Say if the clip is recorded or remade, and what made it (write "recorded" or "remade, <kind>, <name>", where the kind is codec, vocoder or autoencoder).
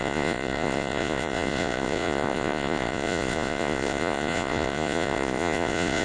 remade, vocoder, Vocos